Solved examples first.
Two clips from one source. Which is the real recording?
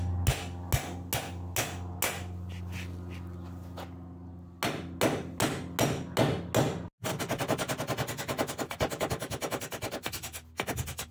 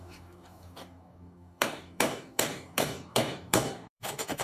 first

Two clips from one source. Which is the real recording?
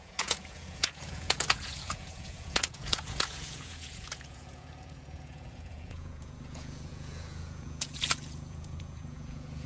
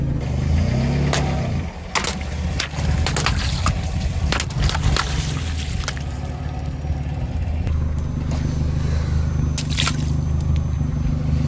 second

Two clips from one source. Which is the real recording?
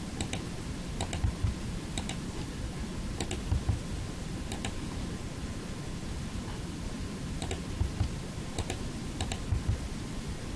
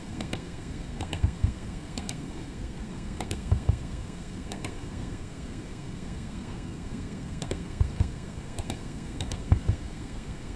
first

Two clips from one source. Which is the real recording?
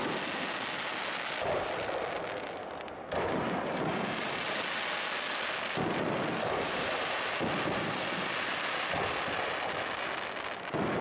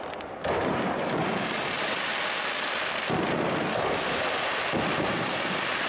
first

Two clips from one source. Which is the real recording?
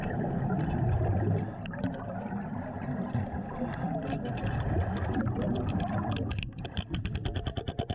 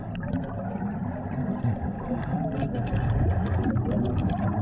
second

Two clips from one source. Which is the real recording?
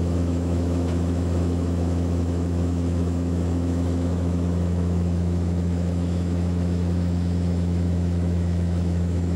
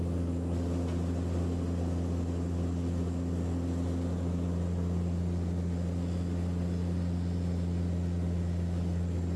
second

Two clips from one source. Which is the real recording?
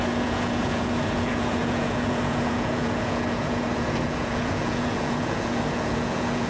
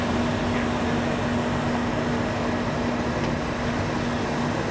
second